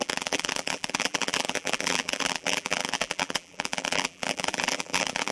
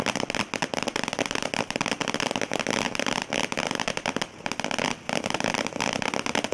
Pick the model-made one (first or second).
first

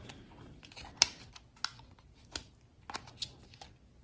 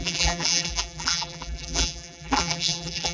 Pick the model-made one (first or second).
second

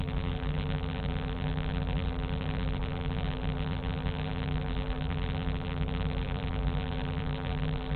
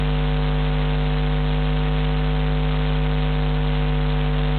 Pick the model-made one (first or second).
first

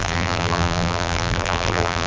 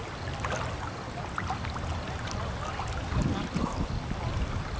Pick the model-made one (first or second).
first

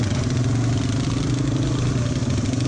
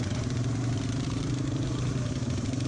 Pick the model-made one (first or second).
second